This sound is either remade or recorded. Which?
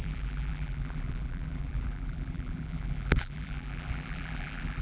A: remade